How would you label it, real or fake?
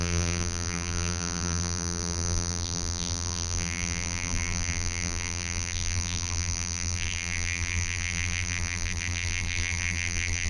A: fake